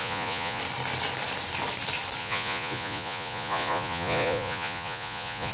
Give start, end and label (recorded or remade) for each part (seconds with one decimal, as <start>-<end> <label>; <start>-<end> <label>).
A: 0.0-0.6 remade; 0.6-2.2 recorded; 2.2-5.5 remade